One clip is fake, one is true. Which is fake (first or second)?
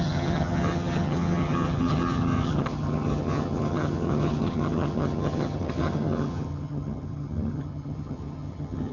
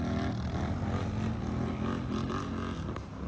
first